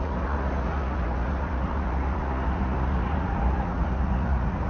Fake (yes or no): yes